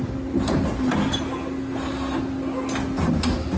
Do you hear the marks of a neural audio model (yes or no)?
no